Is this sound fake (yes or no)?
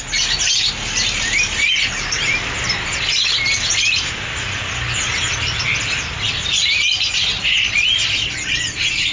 no